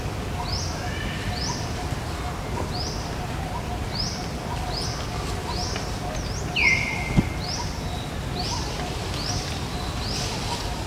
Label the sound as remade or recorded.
recorded